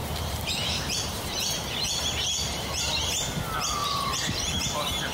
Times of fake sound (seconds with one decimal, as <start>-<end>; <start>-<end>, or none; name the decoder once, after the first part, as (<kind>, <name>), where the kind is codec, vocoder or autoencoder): 0.0-3.1 (vocoder, BigVGAN v2)